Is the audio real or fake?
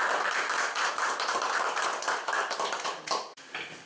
real